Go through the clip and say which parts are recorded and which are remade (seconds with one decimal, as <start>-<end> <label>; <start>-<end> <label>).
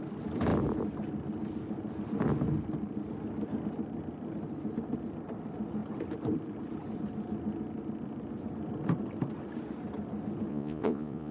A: 0.0-10.5 recorded; 10.5-11.3 remade